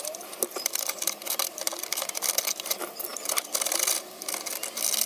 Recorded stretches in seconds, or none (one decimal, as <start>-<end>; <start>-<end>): 0.0-1.7; 2.7-3.1; 3.9-5.1